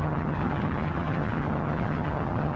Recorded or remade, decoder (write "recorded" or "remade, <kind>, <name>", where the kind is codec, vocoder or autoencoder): remade, vocoder, HiFi-GAN